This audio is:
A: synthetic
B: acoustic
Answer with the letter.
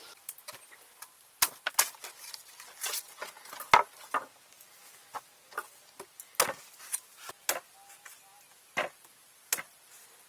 B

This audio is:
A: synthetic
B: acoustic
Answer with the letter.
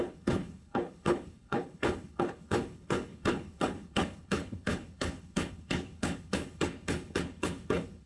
A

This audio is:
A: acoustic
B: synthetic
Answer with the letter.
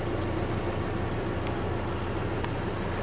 A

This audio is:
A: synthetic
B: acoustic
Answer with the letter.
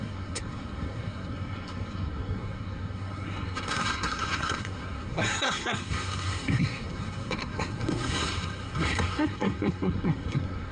A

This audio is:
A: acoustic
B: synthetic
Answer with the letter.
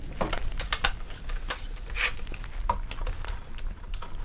A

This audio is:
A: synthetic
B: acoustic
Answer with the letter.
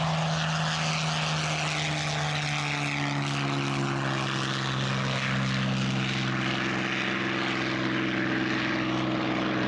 B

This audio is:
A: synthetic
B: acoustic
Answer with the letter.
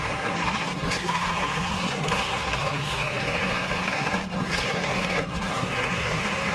A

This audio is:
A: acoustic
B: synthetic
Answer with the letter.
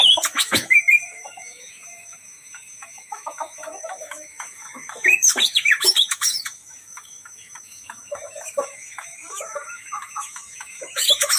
B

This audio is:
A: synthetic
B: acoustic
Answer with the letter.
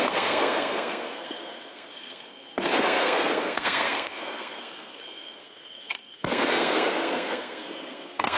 A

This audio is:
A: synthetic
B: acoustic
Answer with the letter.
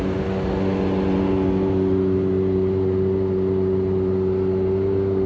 B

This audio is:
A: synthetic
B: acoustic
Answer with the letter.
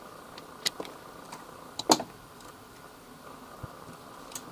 B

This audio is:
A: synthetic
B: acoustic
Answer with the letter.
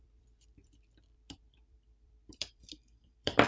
A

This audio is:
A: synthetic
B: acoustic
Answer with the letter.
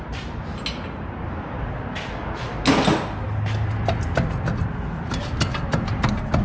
B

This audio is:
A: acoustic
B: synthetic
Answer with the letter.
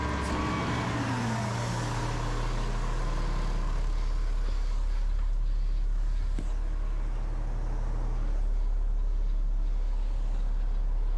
A